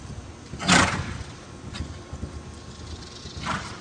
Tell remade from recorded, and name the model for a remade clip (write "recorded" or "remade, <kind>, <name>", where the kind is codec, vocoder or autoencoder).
recorded